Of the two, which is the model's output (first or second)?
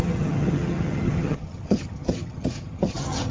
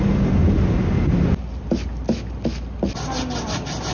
first